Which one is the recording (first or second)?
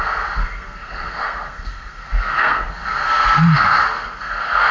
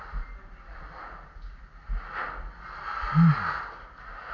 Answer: second